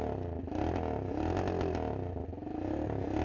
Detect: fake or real real